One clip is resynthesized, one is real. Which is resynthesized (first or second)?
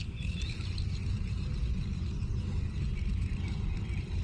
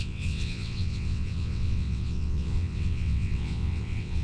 second